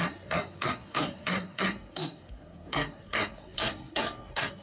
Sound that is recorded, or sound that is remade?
remade